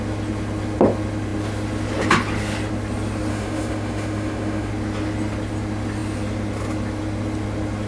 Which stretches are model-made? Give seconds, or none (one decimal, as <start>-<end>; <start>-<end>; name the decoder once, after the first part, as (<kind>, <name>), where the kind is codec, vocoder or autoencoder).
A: 3.3-4.7 (autoencoder, DAC-VAE)